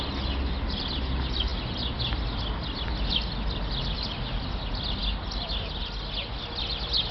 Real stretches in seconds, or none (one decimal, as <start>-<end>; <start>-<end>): 0.0-7.1